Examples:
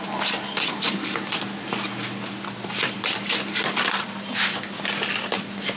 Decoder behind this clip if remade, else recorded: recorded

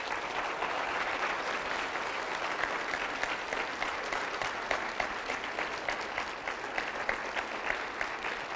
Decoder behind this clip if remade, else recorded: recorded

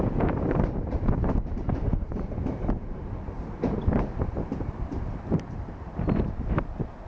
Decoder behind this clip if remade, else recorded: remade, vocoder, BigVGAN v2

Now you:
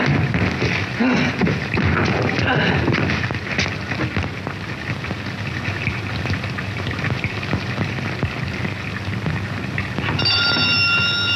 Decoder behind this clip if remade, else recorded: recorded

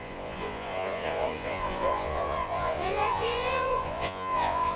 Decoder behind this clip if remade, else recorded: remade, vocoder, Vocos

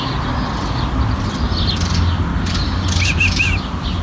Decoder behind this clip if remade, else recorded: recorded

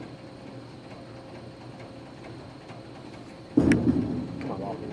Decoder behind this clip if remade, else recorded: recorded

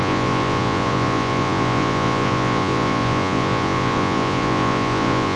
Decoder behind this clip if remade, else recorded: remade, vocoder, Vocos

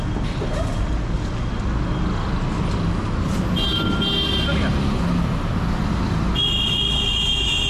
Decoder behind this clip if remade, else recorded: recorded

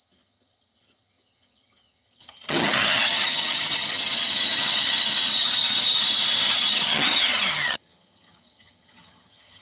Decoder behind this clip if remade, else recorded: remade, vocoder, HiFi-GAN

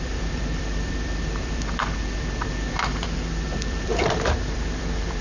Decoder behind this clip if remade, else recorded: remade, vocoder, BigVGAN v2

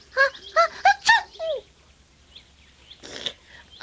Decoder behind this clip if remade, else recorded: recorded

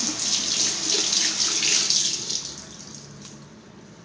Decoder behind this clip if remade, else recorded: recorded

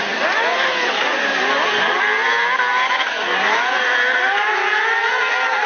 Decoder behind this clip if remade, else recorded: recorded